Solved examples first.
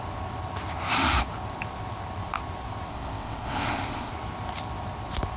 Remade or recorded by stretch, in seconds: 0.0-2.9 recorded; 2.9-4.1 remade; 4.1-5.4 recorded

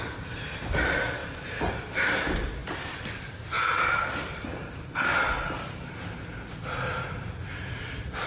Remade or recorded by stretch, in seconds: 0.0-8.3 recorded

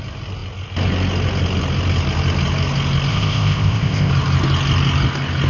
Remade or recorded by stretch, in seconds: 0.0-3.1 recorded; 3.1-4.1 remade; 4.1-5.5 recorded